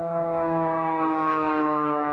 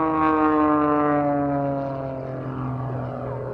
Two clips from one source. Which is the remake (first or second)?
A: first